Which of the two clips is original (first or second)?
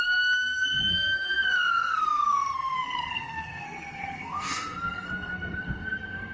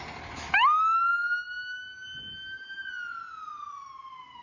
second